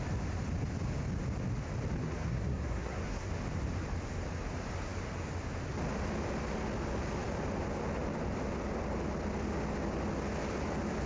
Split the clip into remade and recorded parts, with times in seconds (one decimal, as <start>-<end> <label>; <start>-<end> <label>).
0.0-2.0 recorded; 2.0-3.3 remade; 3.3-11.1 recorded